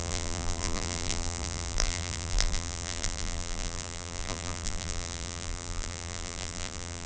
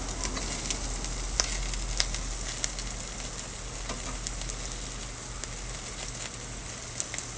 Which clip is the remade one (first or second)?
first